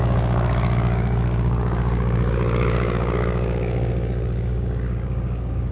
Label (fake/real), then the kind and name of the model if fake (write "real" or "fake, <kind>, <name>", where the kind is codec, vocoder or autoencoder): fake, codec, DAC